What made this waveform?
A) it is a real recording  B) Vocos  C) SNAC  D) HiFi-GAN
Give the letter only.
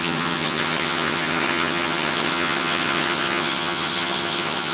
D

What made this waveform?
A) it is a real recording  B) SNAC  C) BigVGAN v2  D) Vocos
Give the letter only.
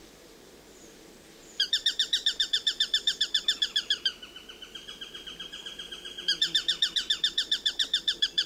C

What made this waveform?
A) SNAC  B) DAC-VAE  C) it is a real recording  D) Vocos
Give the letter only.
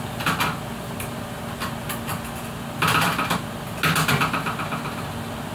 C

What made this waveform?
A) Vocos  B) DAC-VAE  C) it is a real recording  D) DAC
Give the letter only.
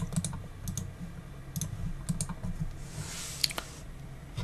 C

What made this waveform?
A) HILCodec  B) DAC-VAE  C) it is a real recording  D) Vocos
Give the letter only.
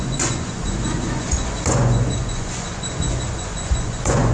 D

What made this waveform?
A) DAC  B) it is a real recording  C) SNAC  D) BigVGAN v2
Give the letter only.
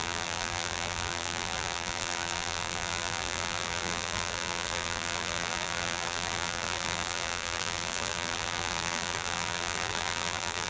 D